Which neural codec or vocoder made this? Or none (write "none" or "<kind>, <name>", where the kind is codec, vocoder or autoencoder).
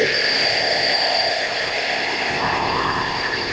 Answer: codec, ZipCodec